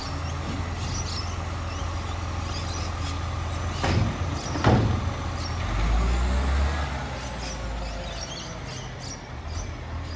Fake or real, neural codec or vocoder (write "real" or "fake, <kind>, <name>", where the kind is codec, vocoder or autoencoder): real